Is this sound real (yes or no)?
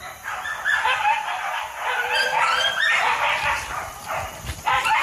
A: no